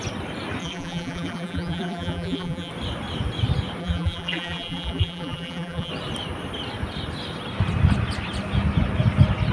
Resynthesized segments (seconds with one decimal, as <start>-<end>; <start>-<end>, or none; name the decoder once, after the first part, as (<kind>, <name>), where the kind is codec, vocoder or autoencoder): 0.6-2.7 (vocoder, BigVGAN v2); 3.8-5.9